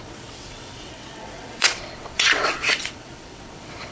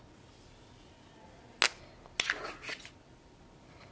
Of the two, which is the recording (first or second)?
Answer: second